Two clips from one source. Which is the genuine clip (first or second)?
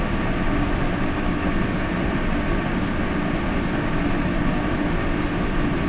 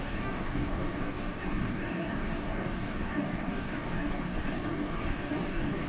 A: first